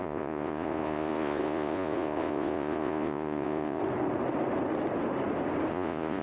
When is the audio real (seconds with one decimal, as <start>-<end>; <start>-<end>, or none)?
3.8-5.7